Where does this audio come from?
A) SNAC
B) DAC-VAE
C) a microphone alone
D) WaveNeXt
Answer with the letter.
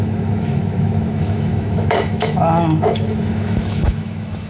B